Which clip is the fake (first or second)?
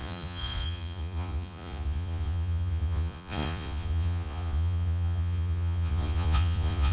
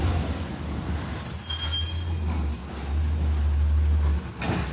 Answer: first